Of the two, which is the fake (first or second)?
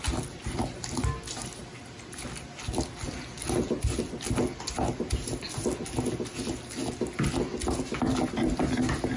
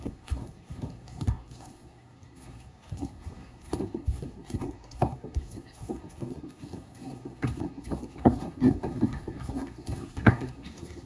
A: second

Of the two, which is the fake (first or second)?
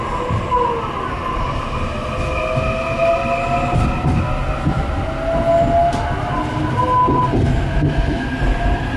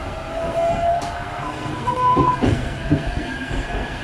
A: second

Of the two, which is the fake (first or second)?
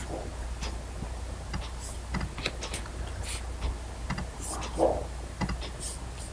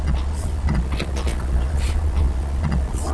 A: second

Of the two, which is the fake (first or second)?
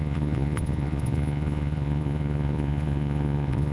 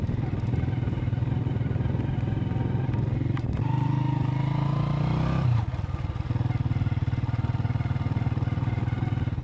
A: first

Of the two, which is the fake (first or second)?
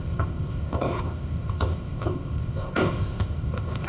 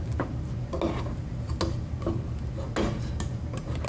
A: first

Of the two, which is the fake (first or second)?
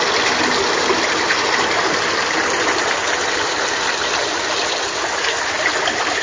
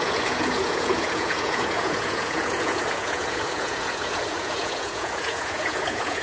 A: second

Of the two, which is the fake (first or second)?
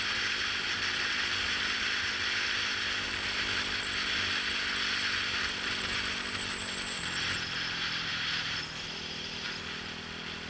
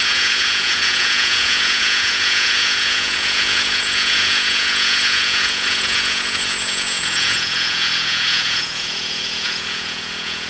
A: second